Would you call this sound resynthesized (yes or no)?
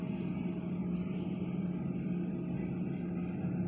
no